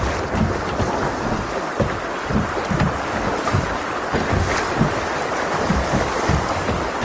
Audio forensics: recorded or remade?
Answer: recorded